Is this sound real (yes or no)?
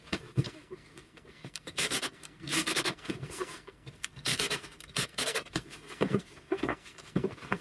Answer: no